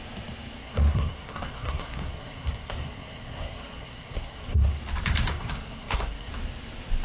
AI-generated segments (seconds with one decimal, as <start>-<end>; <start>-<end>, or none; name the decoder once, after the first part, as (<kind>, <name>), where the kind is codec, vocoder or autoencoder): 0.6-4.8 (codec, SNAC); 5.3-6.3